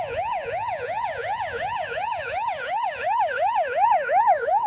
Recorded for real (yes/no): no